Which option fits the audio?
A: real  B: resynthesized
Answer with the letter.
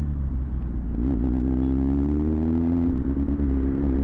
A